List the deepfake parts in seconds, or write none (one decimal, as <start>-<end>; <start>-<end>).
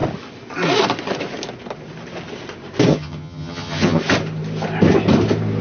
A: 2.9-4.0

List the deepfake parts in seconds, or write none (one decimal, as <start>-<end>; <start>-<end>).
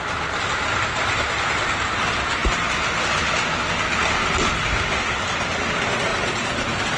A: 6.1-7.0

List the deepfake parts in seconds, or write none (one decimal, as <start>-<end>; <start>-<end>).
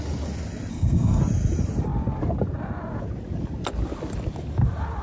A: 0.7-1.2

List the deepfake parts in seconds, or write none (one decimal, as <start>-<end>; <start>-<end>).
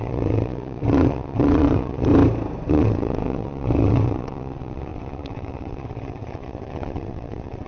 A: 0.0-2.1; 2.7-7.7